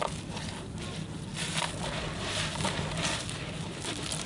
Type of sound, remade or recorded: recorded